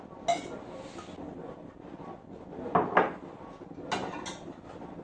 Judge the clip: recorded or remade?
recorded